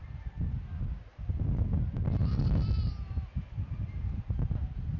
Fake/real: real